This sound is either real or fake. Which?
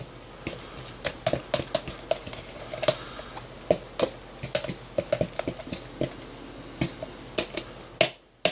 real